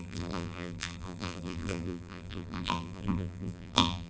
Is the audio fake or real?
fake